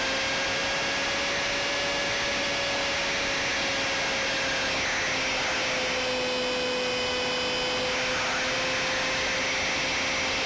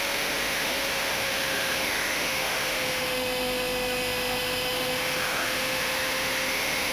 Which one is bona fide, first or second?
first